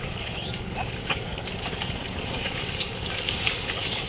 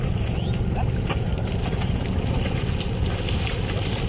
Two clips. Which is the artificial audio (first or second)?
first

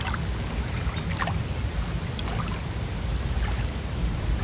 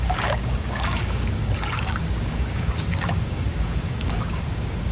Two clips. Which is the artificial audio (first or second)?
second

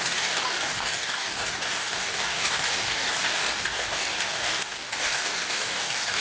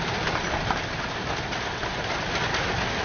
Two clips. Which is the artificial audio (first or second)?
first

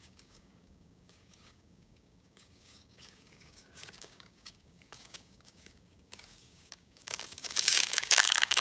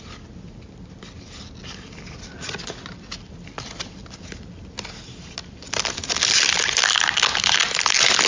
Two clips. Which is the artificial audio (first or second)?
first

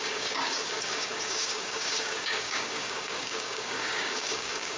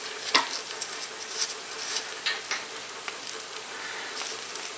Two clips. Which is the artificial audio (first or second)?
first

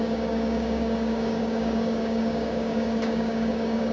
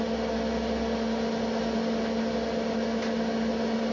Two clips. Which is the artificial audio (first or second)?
first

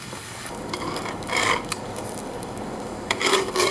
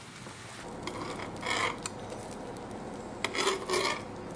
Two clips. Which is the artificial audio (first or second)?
first